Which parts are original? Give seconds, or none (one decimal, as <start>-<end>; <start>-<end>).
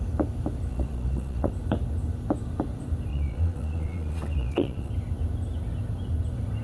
0.0-0.7; 1.5-3.1; 4.9-6.6